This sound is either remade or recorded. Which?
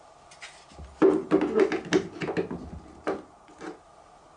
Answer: recorded